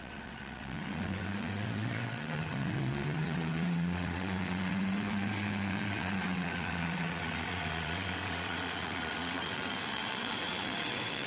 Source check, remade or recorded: remade